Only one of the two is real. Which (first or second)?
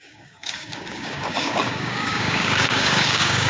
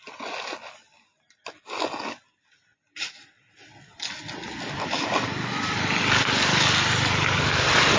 second